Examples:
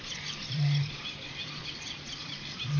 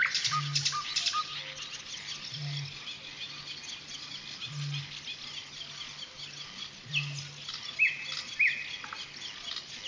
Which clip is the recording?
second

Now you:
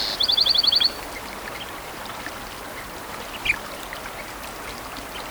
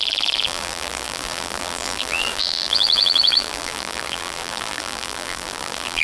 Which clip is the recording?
first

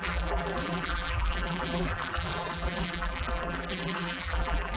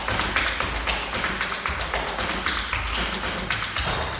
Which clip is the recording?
second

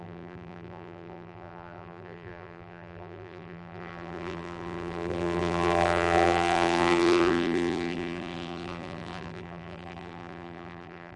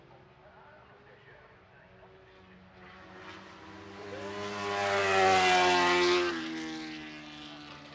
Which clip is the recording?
second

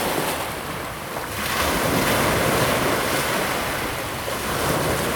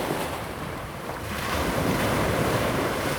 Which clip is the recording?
first